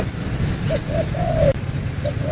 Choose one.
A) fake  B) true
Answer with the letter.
B